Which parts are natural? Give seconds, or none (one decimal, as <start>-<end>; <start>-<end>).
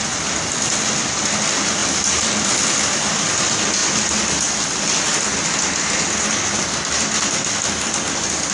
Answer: 0.0-1.8; 3.0-8.5